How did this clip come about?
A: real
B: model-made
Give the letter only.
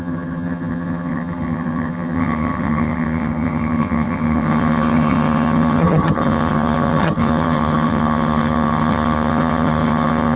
B